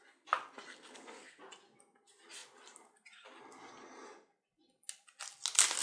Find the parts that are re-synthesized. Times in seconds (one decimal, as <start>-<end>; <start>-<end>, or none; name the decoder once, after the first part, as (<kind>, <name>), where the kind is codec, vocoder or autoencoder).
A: 0.7-1.4 (codec, SNAC)